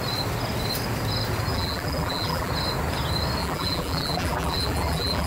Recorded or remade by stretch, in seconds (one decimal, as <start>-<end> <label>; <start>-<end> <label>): 0.0-1.5 recorded; 1.5-2.5 remade; 2.5-3.4 recorded; 3.4-5.3 remade